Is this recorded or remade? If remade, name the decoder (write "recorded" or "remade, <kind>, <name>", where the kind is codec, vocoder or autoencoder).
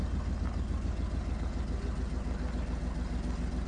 recorded